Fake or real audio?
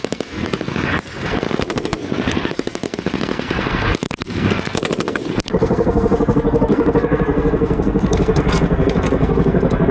fake